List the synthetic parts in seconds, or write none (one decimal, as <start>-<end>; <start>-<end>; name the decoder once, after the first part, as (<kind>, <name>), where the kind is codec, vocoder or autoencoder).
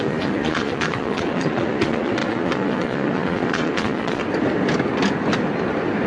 0.0-4.2 (vocoder, Vocos)